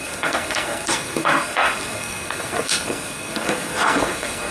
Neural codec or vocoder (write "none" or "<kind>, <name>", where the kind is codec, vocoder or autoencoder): codec, SNAC